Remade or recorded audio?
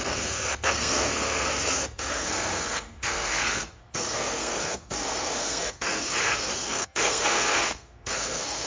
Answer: remade